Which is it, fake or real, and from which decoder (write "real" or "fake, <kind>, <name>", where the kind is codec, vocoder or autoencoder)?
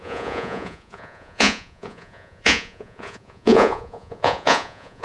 fake, vocoder, Vocos